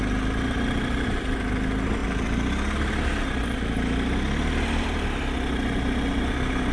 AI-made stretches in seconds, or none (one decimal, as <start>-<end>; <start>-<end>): none